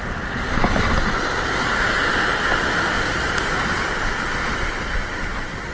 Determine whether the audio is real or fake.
real